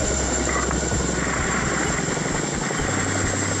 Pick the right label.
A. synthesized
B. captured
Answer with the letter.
B